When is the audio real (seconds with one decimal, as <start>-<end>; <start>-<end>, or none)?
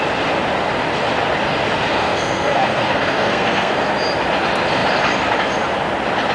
0.0-1.9; 3.9-6.3